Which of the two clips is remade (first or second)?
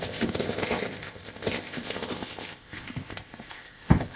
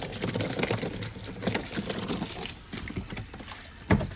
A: first